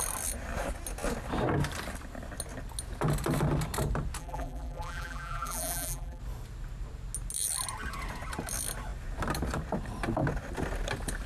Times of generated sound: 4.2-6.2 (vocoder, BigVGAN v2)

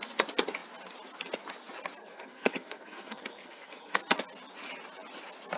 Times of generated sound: 2.0-4.0 (codec, SNAC)

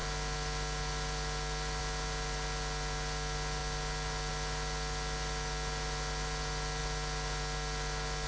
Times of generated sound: none

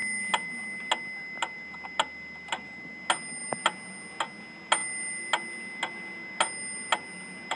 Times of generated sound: none

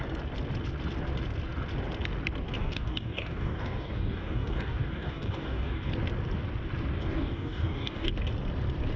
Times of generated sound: 2.6-5.9 (codec, DAC); 6.9-8.1

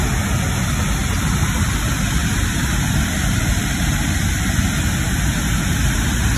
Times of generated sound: 1.0-4.6 (vocoder, BigVGAN v2)